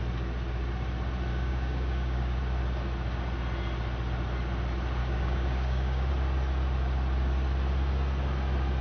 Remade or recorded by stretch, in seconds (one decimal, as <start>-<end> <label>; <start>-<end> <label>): 0.0-1.3 recorded; 1.3-2.4 remade; 2.4-5.0 recorded; 5.0-6.1 remade; 6.1-8.8 recorded